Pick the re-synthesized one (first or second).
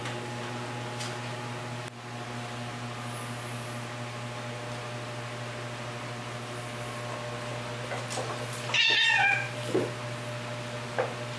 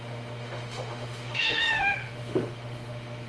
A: second